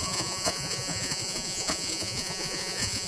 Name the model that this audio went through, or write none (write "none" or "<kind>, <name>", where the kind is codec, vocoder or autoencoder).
vocoder, Vocos